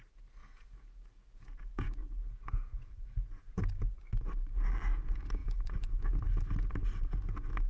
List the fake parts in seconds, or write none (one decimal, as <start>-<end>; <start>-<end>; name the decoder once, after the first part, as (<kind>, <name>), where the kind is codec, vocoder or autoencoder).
0.4-4.0 (vocoder, Vocos); 5.4-6.2